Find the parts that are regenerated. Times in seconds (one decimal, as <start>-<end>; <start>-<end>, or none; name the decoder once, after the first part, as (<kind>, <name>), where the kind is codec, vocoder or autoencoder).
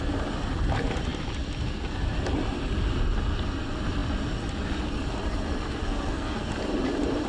5.8-6.5 (codec, SNAC)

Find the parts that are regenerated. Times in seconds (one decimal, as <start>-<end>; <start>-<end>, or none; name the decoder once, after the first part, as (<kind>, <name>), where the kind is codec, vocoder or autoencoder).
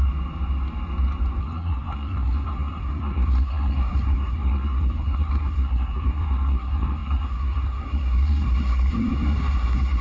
1.4-10.0 (codec, SNAC)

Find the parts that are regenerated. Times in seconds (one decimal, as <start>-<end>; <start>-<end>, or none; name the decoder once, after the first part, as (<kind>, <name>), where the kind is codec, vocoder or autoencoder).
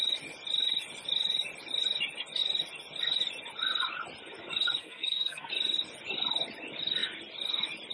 4.8-5.5 (codec, SNAC)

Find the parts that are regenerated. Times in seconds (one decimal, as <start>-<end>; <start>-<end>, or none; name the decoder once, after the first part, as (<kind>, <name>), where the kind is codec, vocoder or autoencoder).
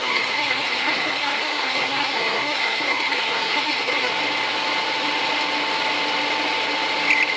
0.0-4.1 (codec, SNAC)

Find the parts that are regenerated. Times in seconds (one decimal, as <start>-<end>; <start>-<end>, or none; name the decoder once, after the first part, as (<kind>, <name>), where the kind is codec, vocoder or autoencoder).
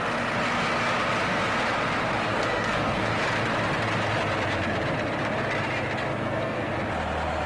2.3-3.1 (codec, SNAC); 6.1-6.7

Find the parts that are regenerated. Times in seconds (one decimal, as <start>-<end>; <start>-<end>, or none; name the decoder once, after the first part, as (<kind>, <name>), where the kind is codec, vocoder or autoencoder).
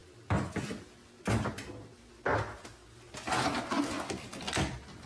none